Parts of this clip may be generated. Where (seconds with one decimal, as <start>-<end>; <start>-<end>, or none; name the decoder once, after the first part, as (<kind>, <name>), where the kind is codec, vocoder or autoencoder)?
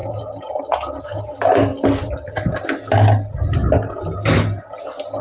0.0-0.6 (vocoder, BigVGAN v2)